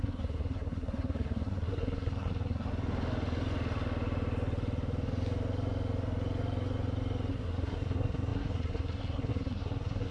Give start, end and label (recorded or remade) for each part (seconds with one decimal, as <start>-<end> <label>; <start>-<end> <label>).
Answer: 0.0-2.7 remade; 2.7-7.3 recorded; 7.3-10.1 remade

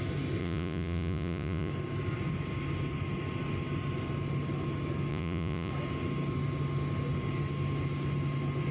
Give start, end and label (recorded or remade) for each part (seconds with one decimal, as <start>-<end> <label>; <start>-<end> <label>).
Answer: 0.0-0.4 recorded; 0.4-1.7 remade; 1.7-5.1 recorded; 5.1-5.7 remade; 5.7-8.7 recorded

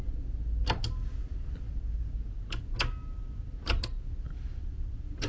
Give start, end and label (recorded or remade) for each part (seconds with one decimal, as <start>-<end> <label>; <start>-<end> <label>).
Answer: 0.0-5.3 recorded

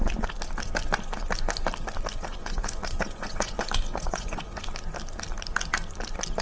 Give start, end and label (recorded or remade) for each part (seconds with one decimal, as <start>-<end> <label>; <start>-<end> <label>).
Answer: 0.0-2.3 recorded; 2.3-4.6 remade; 4.6-6.4 recorded

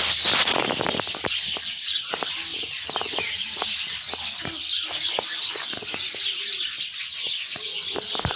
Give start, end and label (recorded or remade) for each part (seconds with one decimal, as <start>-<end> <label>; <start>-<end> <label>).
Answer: 0.0-8.4 recorded

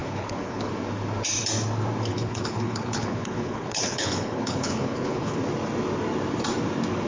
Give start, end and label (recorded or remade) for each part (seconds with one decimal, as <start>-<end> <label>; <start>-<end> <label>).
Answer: 0.0-0.7 remade; 0.7-2.1 recorded; 2.1-5.4 remade; 5.4-7.1 recorded